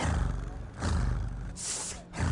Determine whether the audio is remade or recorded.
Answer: recorded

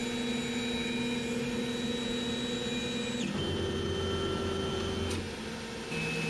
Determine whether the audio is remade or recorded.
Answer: recorded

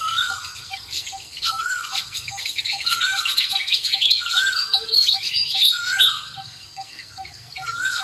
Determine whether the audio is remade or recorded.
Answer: remade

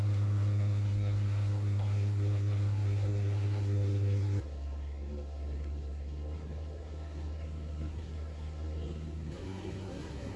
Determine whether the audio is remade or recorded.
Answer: remade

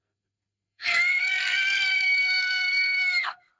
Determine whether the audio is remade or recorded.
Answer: remade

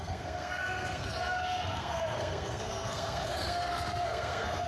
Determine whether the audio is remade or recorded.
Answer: remade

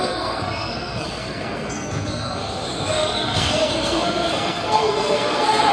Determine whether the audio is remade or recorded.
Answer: remade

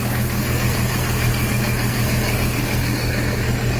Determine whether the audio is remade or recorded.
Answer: remade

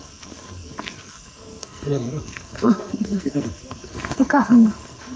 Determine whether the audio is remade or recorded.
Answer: remade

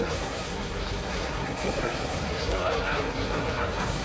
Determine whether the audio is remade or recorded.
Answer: remade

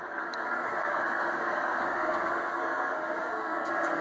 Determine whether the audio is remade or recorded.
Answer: remade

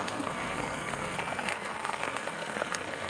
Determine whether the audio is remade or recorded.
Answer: remade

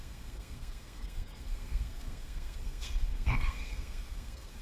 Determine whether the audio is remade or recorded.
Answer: remade